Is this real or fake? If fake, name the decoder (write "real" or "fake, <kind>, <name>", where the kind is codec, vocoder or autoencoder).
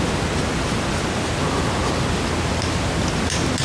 real